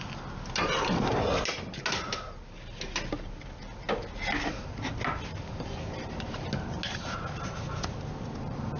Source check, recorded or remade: recorded